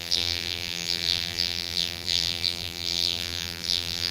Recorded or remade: remade